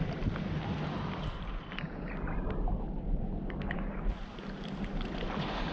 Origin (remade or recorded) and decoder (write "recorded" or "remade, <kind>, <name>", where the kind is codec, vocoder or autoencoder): recorded